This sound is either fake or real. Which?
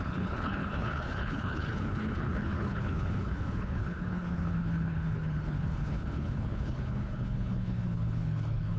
fake